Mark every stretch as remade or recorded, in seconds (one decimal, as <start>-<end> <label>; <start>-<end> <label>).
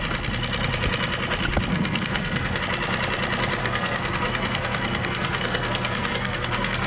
0.0-1.7 recorded; 1.7-2.6 remade; 2.6-3.6 recorded; 3.6-6.9 remade